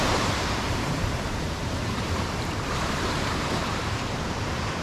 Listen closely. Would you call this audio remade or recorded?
remade